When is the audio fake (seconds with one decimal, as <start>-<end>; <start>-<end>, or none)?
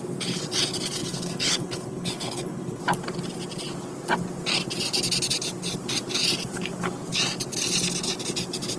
1.0-2.8